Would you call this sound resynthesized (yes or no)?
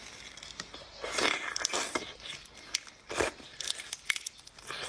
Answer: no